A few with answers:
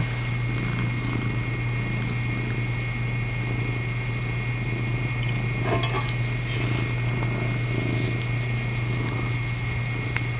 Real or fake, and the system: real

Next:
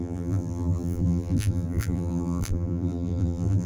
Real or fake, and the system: fake, vocoder, BigVGAN v2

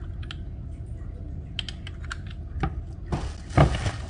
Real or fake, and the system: real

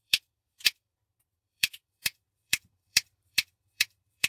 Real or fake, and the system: fake, vocoder, BigVGAN v2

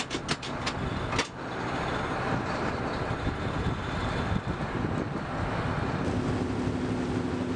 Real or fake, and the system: real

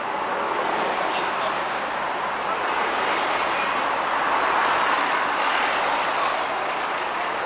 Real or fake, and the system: real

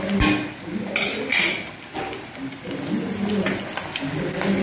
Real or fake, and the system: real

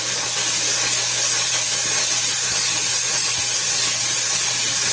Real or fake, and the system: real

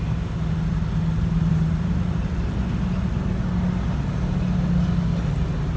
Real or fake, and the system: real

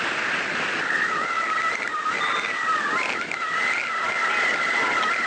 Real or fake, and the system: real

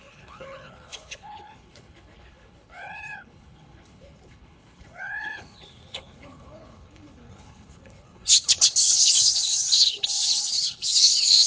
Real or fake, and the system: fake, codec, HILCodec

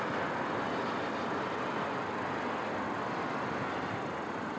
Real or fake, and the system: real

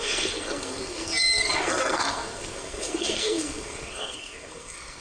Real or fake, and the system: fake, codec, SNAC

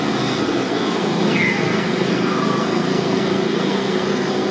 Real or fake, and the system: fake, codec, SNAC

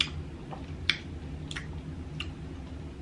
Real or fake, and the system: real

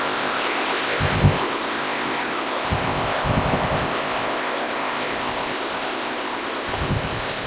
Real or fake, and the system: fake, codec, ZipCodec